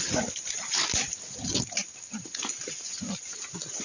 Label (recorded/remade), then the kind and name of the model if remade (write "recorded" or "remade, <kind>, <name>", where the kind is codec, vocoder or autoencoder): recorded